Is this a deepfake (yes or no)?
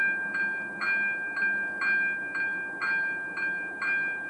no